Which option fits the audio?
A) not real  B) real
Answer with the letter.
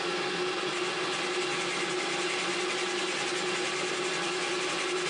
B